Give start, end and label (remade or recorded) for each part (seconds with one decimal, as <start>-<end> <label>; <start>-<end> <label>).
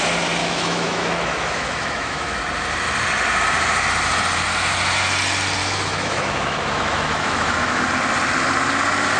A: 0.0-0.4 recorded; 0.4-2.4 remade; 2.4-5.6 recorded; 5.6-7.8 remade; 7.8-9.2 recorded